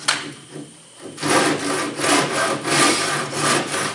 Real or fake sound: real